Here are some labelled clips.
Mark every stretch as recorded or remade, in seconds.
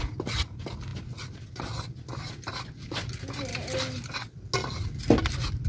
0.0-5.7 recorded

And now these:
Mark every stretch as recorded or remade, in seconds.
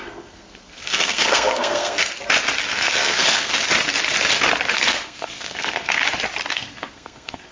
0.0-2.1 remade; 2.1-2.7 recorded; 2.7-3.5 remade; 3.5-4.7 recorded; 4.7-6.0 remade; 6.0-6.5 recorded; 6.5-7.5 remade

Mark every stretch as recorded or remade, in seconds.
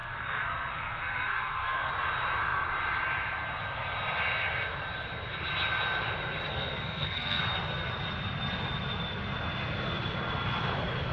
0.0-1.9 remade; 1.9-6.5 recorded; 6.5-7.4 remade; 7.4-11.1 recorded